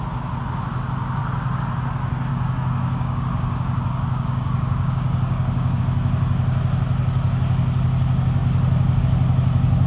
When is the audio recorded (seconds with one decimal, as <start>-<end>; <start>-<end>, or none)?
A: 0.0-2.3; 5.8-9.9